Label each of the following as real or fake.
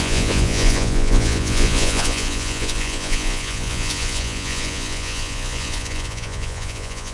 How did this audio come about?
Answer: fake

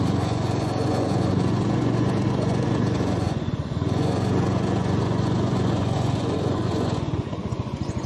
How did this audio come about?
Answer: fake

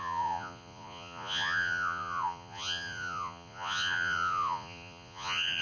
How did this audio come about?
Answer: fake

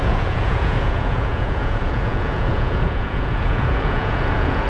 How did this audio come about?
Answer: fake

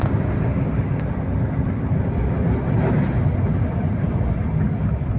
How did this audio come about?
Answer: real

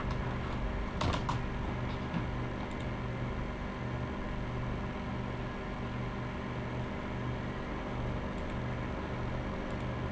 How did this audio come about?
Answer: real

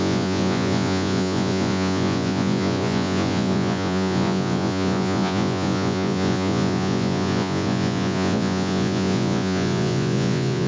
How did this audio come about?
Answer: fake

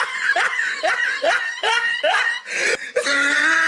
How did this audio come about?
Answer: fake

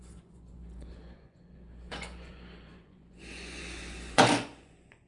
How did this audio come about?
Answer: fake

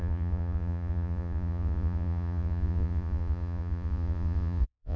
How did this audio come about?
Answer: fake